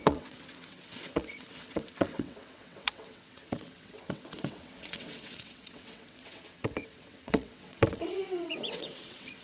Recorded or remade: remade